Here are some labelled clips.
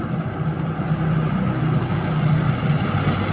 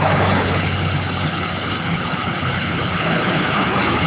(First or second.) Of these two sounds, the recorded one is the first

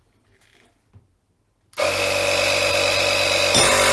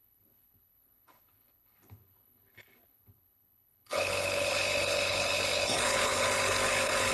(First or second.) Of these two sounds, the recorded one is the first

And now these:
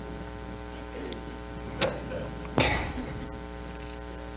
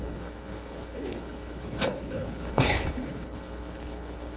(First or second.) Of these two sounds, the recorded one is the first